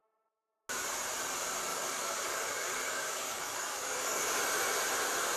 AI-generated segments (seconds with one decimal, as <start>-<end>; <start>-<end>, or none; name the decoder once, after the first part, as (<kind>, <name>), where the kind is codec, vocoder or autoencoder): 1.7-4.2 (codec, DAC)

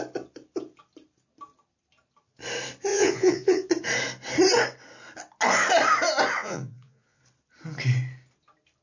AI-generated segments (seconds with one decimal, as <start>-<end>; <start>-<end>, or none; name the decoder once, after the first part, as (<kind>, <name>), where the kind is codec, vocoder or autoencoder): 2.9-3.7 (vocoder, Vocos); 6.4-7.2